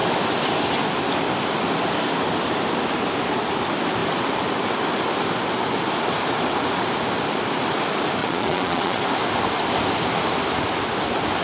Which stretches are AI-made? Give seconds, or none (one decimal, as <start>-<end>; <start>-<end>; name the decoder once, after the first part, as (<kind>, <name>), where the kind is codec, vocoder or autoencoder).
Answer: 8.2-9.0 (vocoder, Vocos)